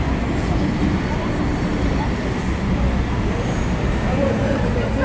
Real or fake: real